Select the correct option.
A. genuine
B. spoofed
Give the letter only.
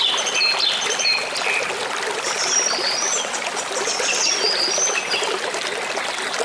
A